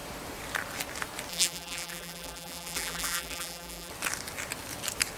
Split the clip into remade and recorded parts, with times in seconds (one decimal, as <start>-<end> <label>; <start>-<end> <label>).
0.0-1.3 recorded; 1.3-3.9 remade; 3.9-5.2 recorded